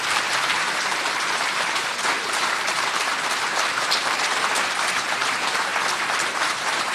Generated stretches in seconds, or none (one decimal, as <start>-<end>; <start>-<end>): 0.0-5.7; 6.5-6.9